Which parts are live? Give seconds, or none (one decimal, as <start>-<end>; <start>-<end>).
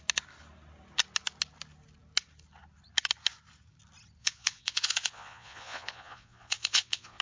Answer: 0.0-4.2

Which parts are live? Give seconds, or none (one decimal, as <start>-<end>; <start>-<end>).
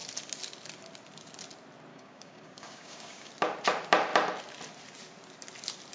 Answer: 0.0-1.9; 3.3-5.9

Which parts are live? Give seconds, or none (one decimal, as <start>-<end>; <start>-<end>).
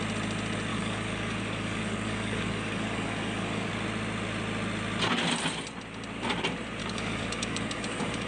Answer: 0.0-0.7; 3.7-6.8